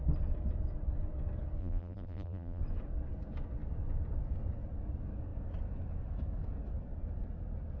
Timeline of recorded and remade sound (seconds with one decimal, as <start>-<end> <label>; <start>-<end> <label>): 0.0-1.6 recorded; 1.6-2.6 remade; 2.6-7.8 recorded